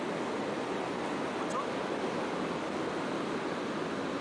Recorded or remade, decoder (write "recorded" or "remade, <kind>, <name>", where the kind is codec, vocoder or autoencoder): recorded